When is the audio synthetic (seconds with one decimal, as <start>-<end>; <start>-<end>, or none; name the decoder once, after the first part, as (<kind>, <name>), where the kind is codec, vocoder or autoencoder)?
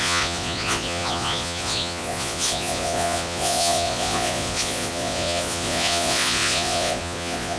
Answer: 0.0-7.6 (vocoder, Vocos)